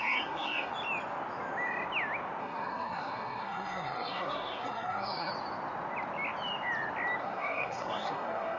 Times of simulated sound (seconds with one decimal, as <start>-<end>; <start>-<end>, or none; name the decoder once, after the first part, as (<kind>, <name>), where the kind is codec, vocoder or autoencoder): 0.0-0.7 (codec, SNAC); 2.4-5.3; 7.2-8.6